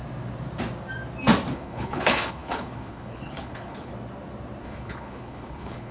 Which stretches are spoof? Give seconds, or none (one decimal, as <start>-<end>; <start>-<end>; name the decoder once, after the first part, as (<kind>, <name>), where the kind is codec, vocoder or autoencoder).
1.5-3.9 (codec, HILCodec); 4.6-5.9